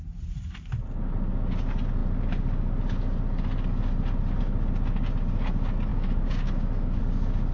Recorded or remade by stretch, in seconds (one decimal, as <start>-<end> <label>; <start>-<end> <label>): 0.0-5.9 recorded; 5.9-7.0 remade; 7.0-7.5 recorded